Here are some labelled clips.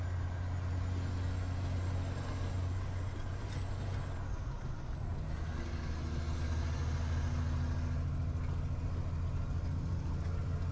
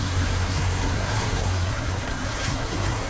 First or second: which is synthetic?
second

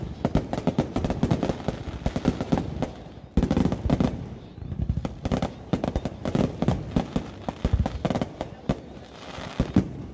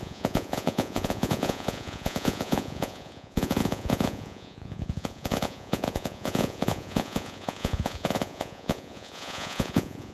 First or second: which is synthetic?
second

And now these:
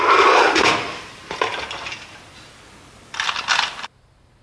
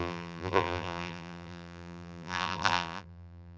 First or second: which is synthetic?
second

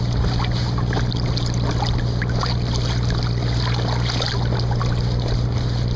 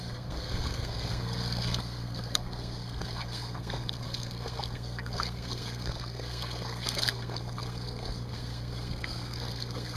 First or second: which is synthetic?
second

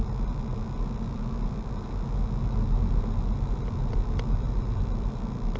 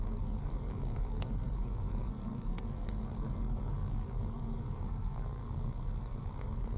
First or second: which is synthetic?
second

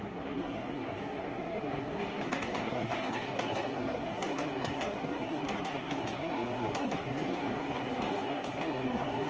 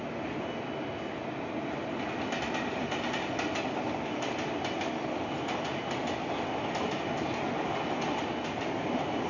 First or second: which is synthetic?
first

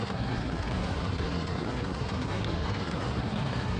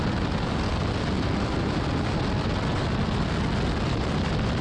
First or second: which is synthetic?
first